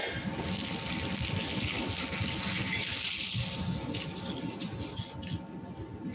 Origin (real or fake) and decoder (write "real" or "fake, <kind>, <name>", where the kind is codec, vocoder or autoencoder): real